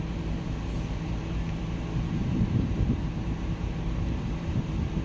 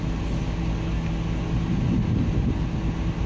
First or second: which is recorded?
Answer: second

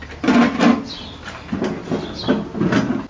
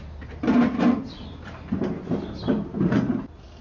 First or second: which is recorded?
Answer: first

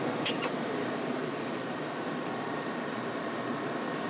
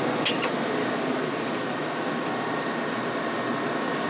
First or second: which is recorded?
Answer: second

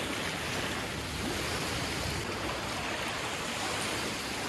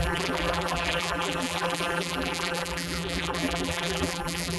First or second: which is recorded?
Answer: first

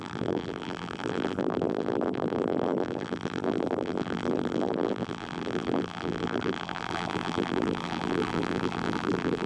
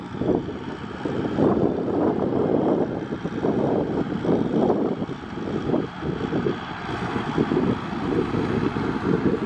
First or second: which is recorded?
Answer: second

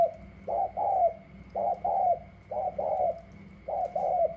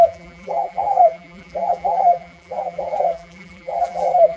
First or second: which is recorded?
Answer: first